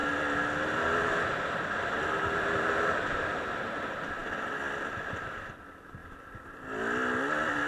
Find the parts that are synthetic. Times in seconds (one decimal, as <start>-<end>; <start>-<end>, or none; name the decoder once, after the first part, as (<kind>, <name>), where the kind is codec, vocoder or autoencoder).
none